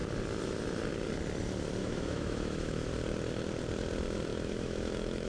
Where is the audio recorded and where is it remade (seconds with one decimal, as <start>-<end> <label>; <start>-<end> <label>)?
0.0-1.8 recorded; 1.8-2.9 remade; 2.9-4.3 recorded; 4.3-5.3 remade